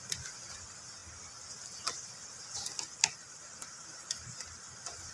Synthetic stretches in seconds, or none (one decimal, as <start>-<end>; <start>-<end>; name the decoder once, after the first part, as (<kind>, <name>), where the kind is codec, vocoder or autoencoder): none